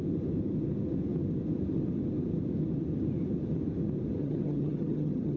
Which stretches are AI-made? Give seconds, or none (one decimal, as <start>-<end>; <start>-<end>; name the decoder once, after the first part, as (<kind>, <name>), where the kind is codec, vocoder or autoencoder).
4.2-5.4 (vocoder, HiFi-GAN)